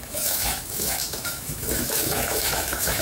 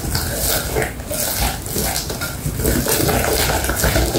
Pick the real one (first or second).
second